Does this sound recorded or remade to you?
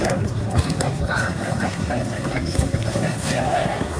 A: remade